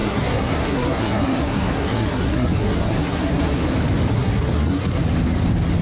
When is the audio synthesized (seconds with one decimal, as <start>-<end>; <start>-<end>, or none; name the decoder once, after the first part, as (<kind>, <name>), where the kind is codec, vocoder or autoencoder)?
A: 0.0-3.6 (codec, SNAC); 4.1-5.0